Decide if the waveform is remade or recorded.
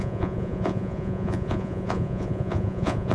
remade